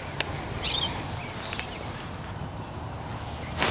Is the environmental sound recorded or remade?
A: recorded